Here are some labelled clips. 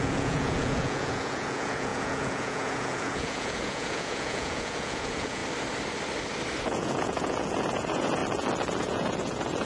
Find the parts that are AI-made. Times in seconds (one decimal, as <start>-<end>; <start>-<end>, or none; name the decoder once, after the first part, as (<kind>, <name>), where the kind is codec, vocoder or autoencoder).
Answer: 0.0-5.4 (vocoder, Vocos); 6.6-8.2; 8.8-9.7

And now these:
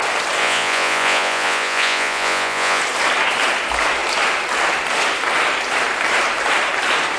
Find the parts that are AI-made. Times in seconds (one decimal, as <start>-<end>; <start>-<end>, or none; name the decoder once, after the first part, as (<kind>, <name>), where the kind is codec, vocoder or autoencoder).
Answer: 0.4-2.8 (vocoder, Vocos)

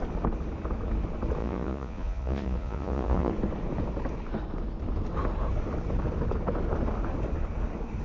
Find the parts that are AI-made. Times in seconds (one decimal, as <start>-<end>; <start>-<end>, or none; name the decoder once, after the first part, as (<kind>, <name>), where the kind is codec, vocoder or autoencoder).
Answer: 1.4-3.3 (vocoder, Vocos)

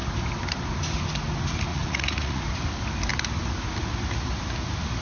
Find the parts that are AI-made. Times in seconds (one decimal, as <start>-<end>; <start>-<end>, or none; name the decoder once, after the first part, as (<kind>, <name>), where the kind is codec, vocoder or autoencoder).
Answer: 1.7-2.4 (vocoder, Vocos)

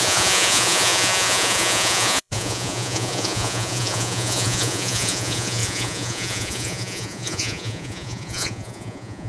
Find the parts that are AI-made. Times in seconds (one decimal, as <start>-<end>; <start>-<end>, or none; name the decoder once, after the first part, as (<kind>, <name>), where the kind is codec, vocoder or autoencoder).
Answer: 0.0-9.3 (vocoder, Vocos)

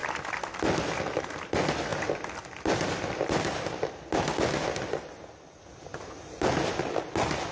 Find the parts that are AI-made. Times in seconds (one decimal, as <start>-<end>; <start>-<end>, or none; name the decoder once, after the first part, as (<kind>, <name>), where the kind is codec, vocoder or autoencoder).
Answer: none

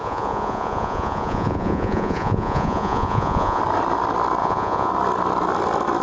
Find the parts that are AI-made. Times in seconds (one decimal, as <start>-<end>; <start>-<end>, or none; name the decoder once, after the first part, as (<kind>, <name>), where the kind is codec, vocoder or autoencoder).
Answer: 0.0-3.6 (vocoder, Vocos); 4.4-4.9